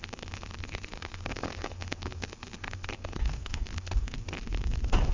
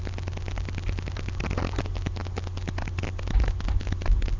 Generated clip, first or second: first